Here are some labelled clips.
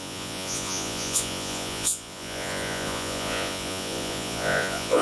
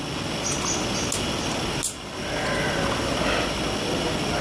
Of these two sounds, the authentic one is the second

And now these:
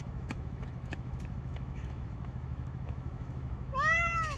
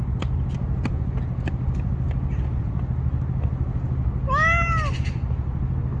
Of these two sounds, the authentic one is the second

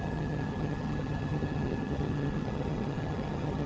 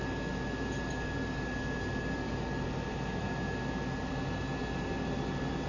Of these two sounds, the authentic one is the second